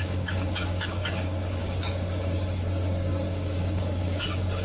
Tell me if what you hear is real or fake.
fake